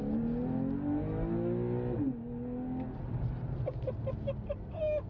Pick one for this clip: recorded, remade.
recorded